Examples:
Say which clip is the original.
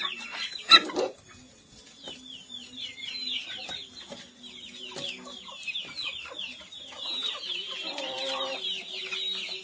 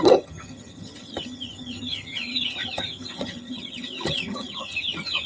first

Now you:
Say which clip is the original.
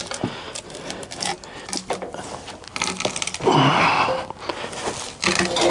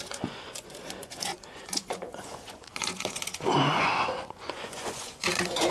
first